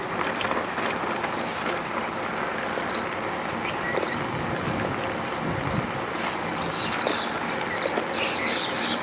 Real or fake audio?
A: real